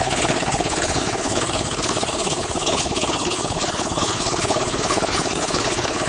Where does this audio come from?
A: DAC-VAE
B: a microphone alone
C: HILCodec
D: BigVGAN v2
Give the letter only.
C